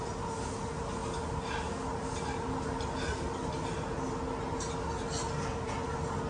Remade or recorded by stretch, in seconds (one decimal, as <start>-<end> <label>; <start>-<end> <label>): 0.0-6.3 recorded